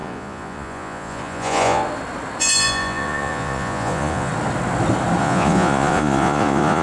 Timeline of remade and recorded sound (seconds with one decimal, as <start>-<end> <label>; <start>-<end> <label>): 0.0-1.8 remade; 1.8-2.4 recorded; 2.4-4.3 remade; 4.3-5.2 recorded; 5.2-6.8 remade

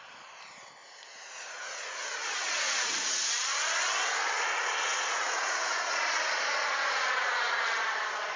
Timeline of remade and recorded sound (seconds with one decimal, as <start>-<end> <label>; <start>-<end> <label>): 0.0-0.8 recorded; 0.8-3.3 remade; 3.3-4.9 recorded; 4.9-7.6 remade; 7.6-8.4 recorded

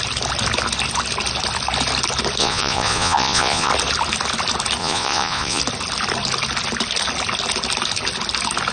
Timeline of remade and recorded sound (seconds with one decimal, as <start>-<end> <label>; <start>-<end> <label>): 0.0-2.4 recorded; 2.4-3.7 remade; 3.7-4.8 recorded; 4.8-5.6 remade; 5.6-8.7 recorded

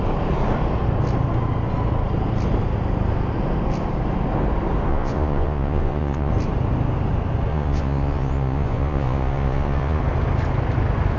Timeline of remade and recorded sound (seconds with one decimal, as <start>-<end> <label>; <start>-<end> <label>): 0.0-4.9 recorded; 4.9-6.3 remade; 6.3-7.5 recorded; 7.5-10.0 remade; 10.0-11.2 recorded